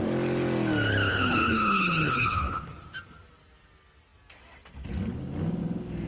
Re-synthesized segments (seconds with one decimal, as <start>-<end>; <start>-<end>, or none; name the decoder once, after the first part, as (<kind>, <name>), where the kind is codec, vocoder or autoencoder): 1.1-2.7 (codec, HILCodec)